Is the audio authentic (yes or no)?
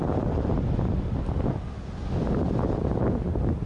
yes